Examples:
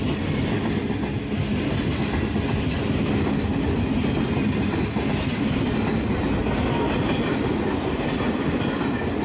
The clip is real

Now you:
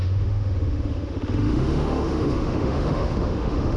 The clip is fake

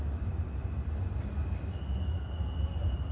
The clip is real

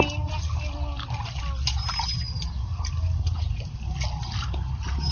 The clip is real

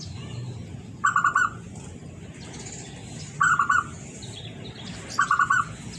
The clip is real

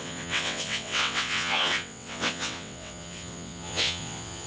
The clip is fake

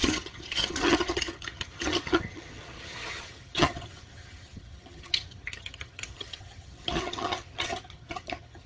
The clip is fake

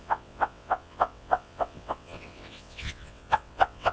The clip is fake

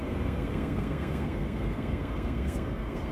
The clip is fake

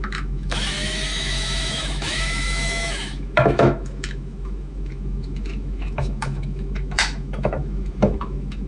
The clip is fake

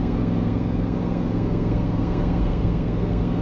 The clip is fake